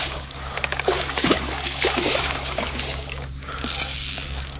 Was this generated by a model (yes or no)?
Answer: yes